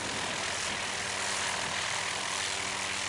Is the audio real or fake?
real